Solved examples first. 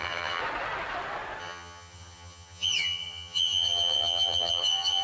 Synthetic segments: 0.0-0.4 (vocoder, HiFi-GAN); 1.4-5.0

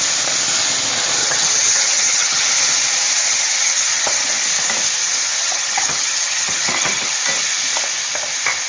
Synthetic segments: 1.2-2.5 (vocoder, HiFi-GAN); 3.2-4.3; 5.4-7.1

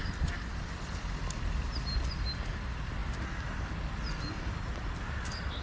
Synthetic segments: none